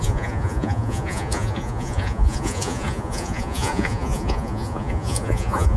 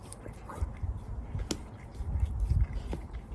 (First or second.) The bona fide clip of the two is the second